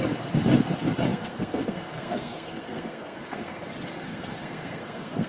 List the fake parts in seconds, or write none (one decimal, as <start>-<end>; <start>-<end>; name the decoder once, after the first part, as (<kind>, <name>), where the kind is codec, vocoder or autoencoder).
1.1-3.6 (codec, SNAC); 4.1-5.3